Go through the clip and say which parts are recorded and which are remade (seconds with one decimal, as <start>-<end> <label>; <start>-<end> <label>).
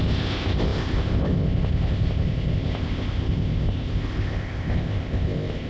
0.0-5.7 remade